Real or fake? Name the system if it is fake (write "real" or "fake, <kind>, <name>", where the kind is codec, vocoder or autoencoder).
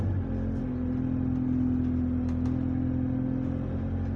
real